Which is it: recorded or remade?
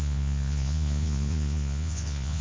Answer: remade